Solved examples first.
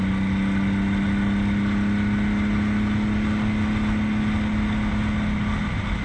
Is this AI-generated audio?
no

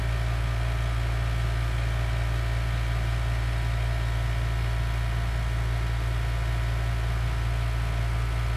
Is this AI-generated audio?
no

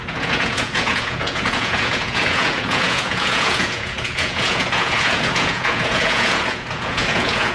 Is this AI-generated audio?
yes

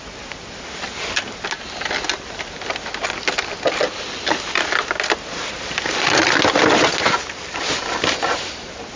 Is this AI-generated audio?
no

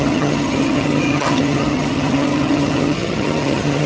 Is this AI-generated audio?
yes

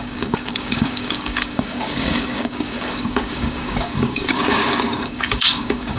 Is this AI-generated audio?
yes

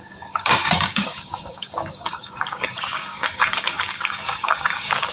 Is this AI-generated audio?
yes